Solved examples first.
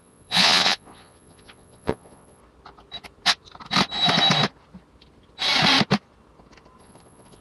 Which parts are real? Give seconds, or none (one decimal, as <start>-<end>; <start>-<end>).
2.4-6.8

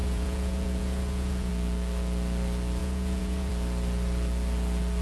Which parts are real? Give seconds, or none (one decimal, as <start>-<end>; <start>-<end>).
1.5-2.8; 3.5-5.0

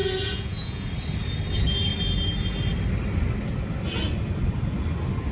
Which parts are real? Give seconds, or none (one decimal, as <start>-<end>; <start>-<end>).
0.9-5.3

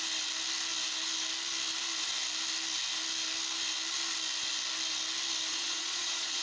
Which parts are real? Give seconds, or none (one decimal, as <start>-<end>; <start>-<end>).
0.0-5.5

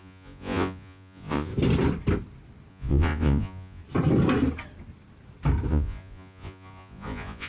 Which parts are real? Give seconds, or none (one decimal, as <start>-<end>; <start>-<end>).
1.5-2.7; 3.8-5.7

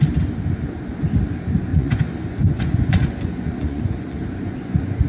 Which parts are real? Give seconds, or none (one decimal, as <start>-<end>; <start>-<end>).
0.0-1.7

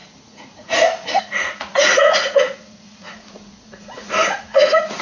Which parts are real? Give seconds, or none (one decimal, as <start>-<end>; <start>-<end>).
none